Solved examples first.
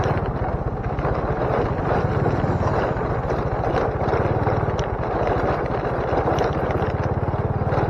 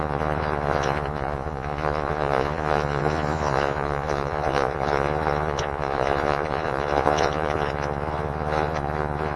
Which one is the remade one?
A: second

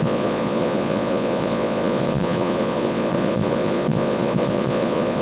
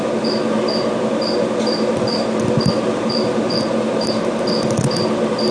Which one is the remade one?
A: first